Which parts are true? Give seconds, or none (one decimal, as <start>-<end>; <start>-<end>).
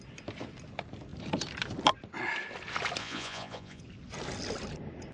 0.0-3.0; 3.8-5.1